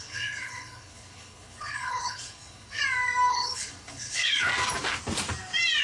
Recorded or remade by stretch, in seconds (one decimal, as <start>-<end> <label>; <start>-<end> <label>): 0.0-2.8 remade; 2.8-3.3 recorded; 3.3-4.5 remade; 4.5-5.8 recorded